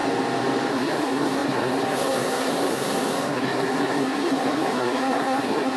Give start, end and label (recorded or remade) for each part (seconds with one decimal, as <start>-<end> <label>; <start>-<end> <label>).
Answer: 0.0-0.7 recorded; 0.7-5.8 remade